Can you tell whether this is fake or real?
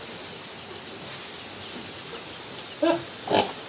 real